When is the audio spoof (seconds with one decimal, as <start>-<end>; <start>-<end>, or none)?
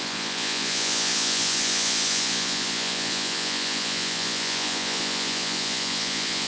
0.0-6.5